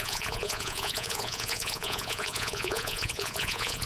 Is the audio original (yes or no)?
no